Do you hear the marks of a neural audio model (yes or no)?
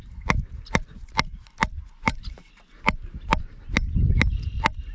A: no